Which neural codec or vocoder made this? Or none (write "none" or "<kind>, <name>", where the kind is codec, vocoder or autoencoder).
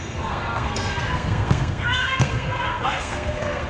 codec, SNAC